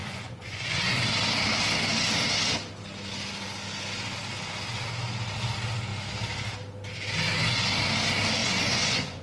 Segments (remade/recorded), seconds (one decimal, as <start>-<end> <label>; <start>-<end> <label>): 0.0-1.0 remade; 1.0-8.4 recorded; 8.4-9.2 remade